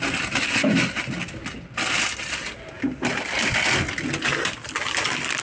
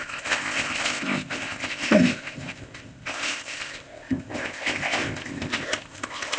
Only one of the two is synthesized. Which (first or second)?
second